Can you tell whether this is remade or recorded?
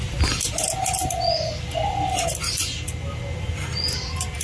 recorded